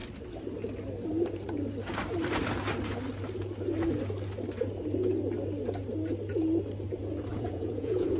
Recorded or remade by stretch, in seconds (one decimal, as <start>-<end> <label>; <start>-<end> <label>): 0.0-7.3 recorded; 7.3-8.2 remade